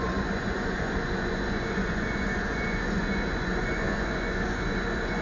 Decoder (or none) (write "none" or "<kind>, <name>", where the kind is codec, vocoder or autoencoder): vocoder, Vocos